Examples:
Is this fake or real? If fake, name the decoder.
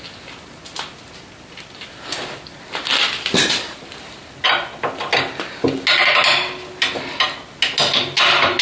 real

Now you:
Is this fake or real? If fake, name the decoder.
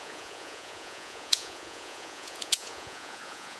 fake, vocoder, Vocos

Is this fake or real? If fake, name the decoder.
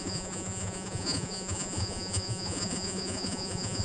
fake, vocoder, Vocos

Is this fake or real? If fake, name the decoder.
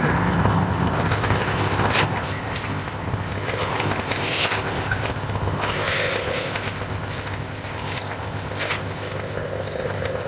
fake, codec, ZipCodec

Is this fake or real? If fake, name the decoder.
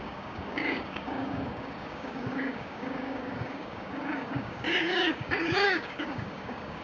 fake, codec, DAC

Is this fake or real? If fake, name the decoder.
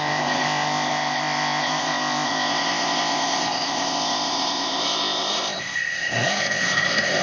fake, codec, ZipCodec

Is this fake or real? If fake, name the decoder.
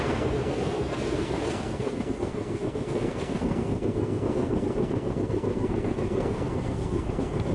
fake, codec, SNAC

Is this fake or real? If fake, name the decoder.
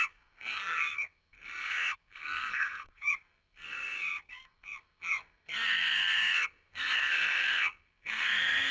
fake, codec, SNAC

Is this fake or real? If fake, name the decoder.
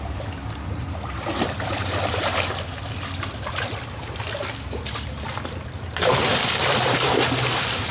fake, vocoder, BigVGAN v2